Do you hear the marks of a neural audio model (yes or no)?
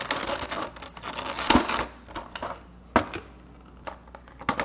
no